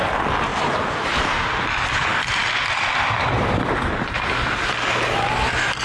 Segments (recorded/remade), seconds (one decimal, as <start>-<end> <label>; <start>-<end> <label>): 0.0-0.5 recorded; 0.5-1.7 remade; 1.7-5.8 recorded